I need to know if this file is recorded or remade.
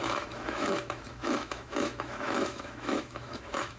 remade